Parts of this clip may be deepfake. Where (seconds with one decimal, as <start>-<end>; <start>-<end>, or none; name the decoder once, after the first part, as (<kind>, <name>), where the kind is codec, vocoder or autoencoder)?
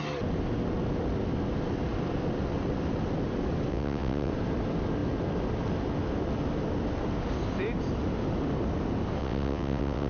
3.7-4.3 (vocoder, WaveNeXt); 9.2-10.1